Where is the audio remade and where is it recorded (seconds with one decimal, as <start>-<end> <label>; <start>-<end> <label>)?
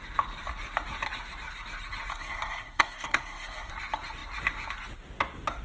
0.0-2.1 recorded; 2.1-3.7 remade; 3.7-5.6 recorded